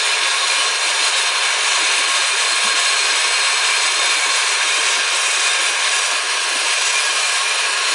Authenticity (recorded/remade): recorded